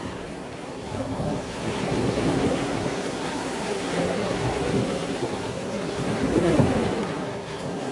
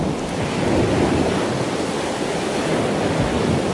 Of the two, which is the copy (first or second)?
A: first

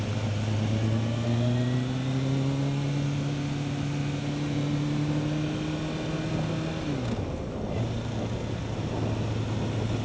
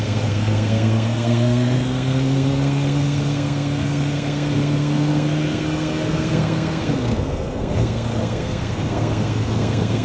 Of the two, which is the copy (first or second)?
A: second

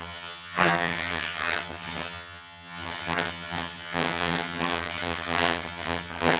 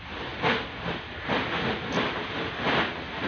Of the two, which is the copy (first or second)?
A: first